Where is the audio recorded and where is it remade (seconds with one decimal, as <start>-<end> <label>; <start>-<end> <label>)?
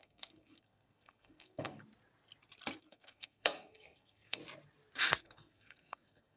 0.0-1.8 remade; 1.8-2.8 recorded; 2.8-4.4 remade; 4.4-5.2 recorded; 5.2-6.4 remade